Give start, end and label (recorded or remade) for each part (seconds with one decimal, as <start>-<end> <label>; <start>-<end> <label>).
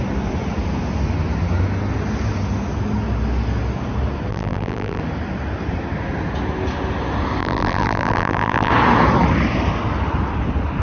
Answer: 0.0-4.3 recorded; 4.3-5.0 remade; 5.0-7.4 recorded; 7.4-8.7 remade; 8.7-10.8 recorded